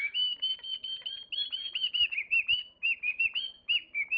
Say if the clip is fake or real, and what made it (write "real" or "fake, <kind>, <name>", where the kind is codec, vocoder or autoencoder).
real